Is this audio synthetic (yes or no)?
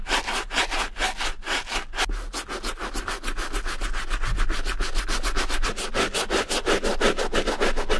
no